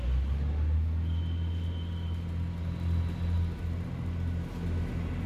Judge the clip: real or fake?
real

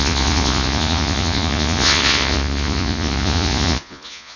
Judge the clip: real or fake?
fake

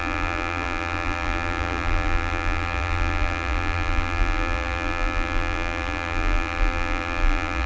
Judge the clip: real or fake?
fake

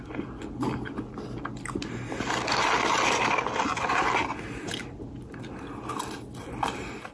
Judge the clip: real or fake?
real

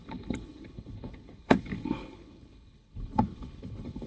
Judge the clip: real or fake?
fake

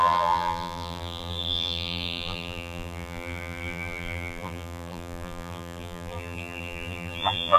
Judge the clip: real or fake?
fake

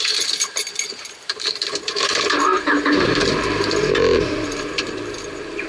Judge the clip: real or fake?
fake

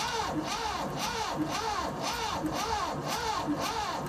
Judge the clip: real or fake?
real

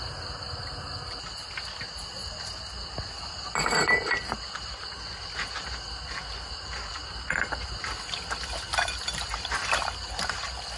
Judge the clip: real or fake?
real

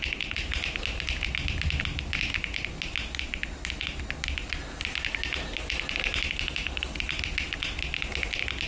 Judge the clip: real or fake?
real